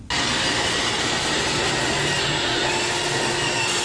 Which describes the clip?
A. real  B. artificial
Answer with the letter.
A